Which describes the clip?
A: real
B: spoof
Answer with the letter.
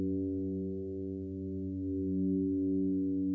A